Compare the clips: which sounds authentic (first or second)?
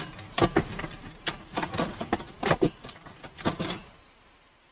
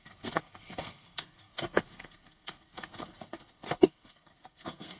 first